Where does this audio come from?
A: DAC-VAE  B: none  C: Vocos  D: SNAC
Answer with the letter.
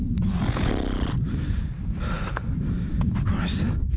B